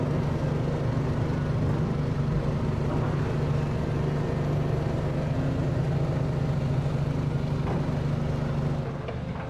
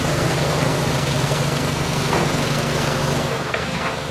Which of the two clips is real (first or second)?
first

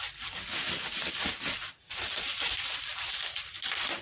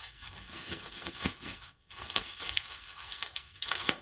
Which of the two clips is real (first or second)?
first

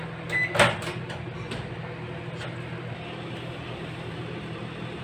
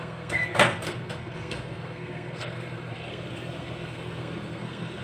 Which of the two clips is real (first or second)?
first